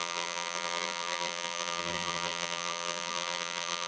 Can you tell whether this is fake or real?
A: fake